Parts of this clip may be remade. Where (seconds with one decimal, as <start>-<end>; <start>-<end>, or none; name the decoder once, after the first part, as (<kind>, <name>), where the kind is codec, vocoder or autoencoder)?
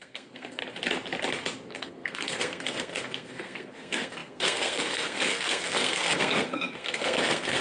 0.0-0.6 (codec, SNAC); 1.7-7.6